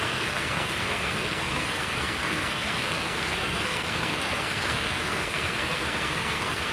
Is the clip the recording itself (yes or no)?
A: no